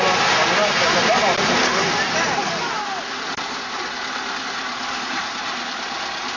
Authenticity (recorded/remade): recorded